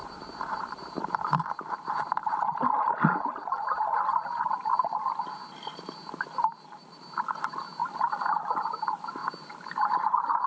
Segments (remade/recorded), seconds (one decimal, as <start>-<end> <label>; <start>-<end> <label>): 0.0-2.9 remade; 2.9-9.2 recorded; 9.2-10.5 remade